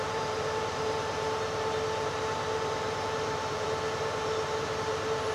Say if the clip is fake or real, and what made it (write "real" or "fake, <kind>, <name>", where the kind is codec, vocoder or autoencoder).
fake, vocoder, BigVGAN v2